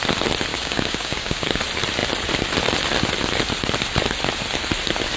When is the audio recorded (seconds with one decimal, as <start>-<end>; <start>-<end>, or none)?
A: 0.0-0.5; 1.6-5.2